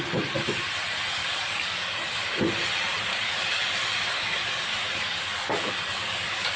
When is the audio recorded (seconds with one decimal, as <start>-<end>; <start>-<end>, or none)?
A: 0.0-1.2; 2.5-3.1

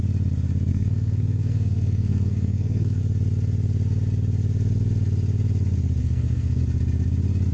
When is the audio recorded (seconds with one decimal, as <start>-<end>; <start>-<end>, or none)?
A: 0.0-0.7; 3.0-6.0; 6.6-7.5

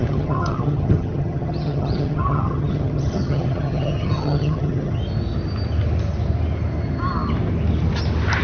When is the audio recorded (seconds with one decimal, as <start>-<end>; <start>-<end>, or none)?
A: 5.0-8.4

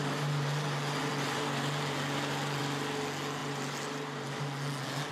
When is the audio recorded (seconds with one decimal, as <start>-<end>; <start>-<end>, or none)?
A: 0.0-5.1

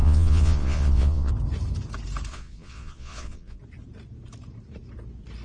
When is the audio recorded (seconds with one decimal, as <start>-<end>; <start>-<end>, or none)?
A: 1.3-2.3; 3.6-5.4

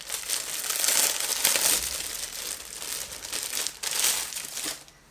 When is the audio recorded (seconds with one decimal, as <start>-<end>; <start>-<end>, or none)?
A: 0.0-5.1

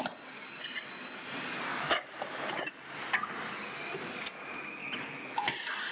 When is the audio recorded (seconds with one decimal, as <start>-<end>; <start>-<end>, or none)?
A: 0.0-1.7; 2.6-4.8; 5.4-5.9

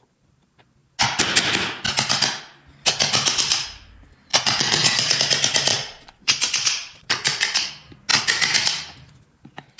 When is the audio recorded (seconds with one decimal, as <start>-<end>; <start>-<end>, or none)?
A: 0.0-4.3; 5.2-5.7; 7.7-9.8